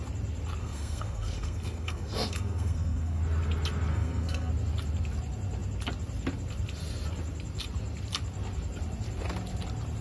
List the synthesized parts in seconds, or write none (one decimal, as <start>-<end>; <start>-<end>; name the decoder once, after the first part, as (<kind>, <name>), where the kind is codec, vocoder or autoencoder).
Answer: 0.6-3.2 (codec, SNAC); 3.9-4.5